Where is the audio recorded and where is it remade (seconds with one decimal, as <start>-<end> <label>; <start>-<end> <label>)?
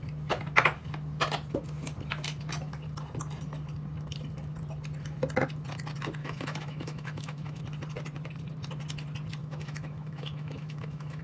0.0-6.2 recorded; 6.2-7.6 remade; 7.6-9.4 recorded; 9.4-11.2 remade